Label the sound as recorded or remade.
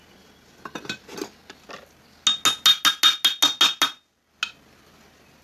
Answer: recorded